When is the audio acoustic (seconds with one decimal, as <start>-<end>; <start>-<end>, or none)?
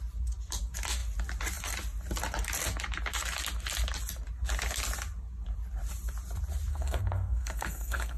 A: 0.0-6.7